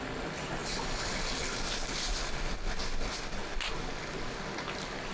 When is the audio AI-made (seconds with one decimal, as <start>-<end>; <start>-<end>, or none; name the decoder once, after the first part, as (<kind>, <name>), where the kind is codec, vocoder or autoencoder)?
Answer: none